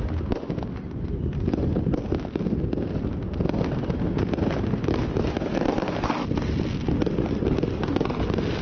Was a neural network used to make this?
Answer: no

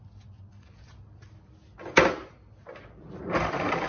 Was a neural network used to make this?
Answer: no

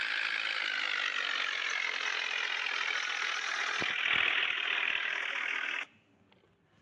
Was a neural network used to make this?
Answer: no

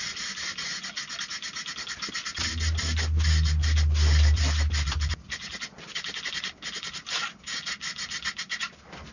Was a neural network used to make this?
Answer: no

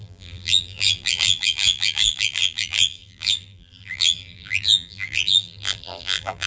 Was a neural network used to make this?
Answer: yes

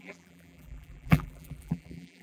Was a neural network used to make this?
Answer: yes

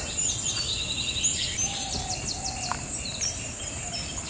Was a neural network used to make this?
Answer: no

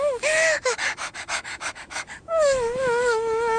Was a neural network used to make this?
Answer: yes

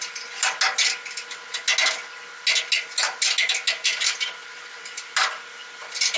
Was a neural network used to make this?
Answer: no